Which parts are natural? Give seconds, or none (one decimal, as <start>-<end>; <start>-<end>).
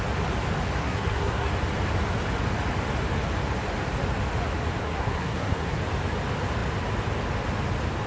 0.0-0.8; 1.5-4.8; 5.8-8.1